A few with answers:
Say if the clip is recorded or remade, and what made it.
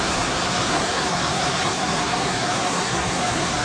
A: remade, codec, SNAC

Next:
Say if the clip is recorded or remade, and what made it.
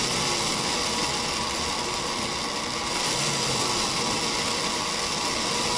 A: recorded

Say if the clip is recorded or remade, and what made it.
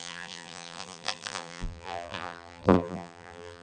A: remade, vocoder, BigVGAN v2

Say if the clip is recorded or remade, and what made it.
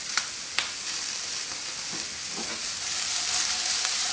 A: recorded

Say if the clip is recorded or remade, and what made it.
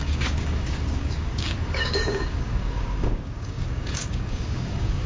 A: remade, codec, DAC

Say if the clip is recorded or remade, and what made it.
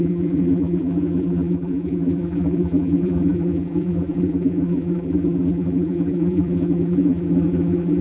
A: remade, vocoder, BigVGAN v2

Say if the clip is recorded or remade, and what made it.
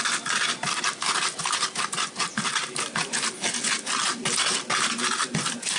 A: recorded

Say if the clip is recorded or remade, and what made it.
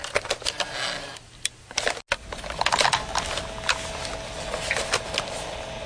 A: recorded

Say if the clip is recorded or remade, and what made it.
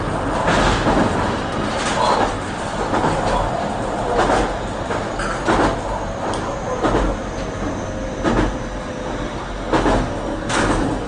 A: recorded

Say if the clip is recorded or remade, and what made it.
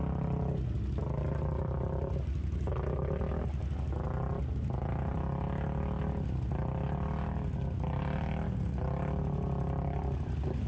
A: recorded